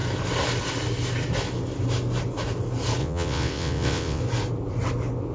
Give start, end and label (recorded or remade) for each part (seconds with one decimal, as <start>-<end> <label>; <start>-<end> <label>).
0.0-3.0 recorded; 3.0-4.2 remade; 4.2-5.3 recorded